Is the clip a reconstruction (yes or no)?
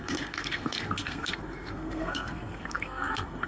yes